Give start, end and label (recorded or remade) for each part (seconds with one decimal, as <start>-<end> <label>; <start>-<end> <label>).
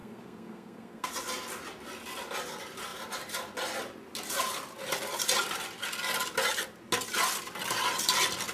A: 0.0-1.1 remade; 1.1-8.5 recorded